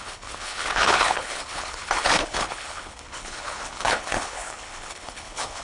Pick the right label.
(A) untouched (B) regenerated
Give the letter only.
B